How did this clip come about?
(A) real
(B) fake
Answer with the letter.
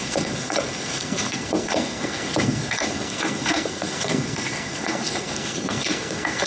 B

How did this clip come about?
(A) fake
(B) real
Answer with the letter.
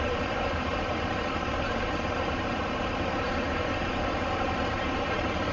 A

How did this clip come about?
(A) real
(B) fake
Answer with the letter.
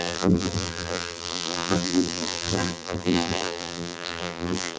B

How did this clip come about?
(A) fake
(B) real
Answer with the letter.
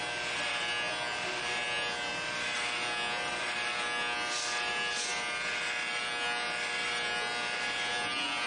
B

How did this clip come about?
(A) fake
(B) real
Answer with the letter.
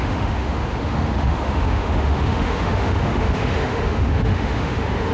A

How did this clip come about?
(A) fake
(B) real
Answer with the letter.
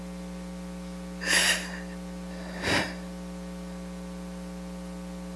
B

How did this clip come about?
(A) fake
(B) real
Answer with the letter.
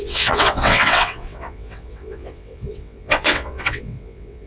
A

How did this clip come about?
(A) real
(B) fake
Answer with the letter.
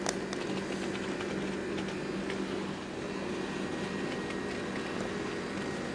A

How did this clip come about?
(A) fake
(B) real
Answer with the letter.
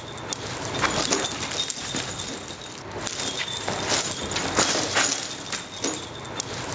B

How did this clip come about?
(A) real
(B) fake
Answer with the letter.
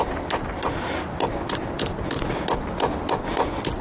A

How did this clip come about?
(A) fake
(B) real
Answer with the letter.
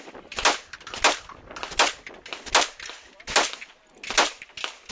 B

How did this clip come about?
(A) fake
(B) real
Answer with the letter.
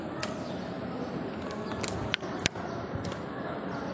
B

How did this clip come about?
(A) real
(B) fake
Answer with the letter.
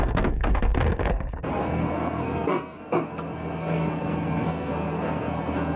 B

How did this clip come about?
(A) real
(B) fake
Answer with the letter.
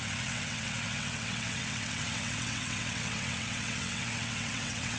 B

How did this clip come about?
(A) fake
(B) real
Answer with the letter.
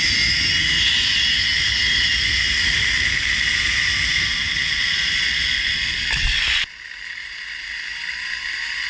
B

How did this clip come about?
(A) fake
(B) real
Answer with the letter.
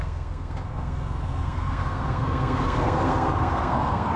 A